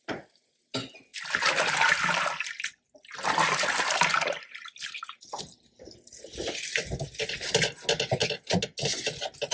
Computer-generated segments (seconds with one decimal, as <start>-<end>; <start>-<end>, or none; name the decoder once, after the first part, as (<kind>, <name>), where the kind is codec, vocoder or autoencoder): none